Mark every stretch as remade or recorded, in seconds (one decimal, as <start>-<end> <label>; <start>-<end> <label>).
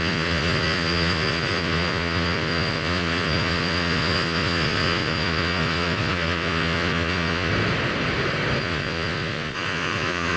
0.0-7.5 remade; 7.5-8.6 recorded; 8.6-10.4 remade